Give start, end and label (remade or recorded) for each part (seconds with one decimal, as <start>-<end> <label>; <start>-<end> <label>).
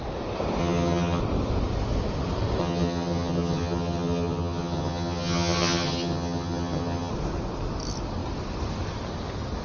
0.0-0.6 recorded; 0.6-1.2 remade; 1.2-2.6 recorded; 2.6-7.1 remade; 7.1-9.6 recorded